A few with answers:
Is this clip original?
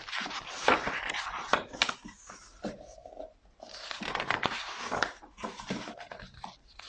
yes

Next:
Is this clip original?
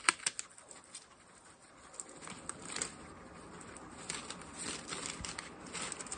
yes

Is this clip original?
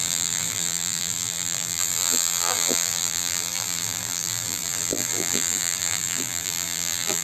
no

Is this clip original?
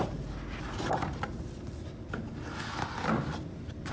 yes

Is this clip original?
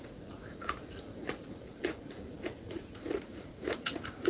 no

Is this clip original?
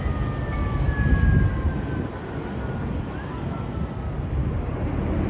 yes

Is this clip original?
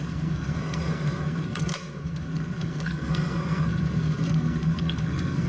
no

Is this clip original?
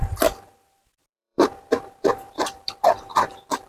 no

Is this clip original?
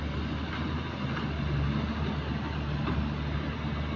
yes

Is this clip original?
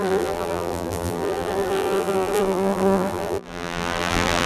no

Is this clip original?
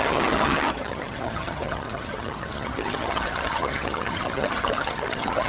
no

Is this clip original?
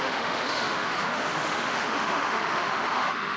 no